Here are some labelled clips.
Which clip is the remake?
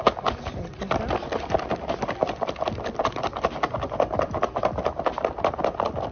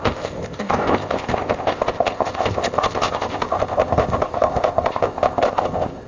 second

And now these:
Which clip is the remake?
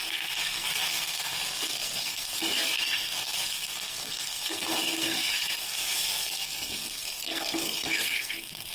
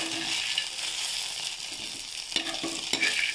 first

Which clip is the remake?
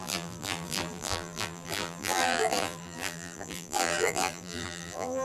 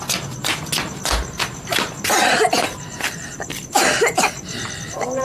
first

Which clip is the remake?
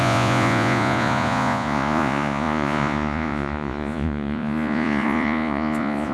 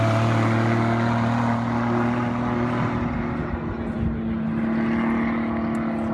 first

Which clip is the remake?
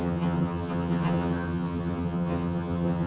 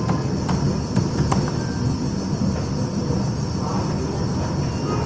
first